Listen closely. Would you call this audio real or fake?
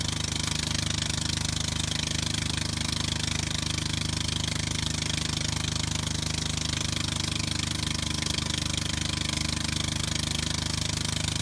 real